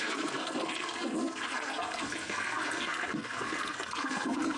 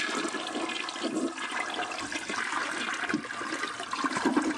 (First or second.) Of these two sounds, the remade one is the first